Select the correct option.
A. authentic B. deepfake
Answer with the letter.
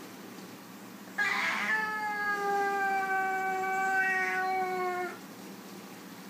A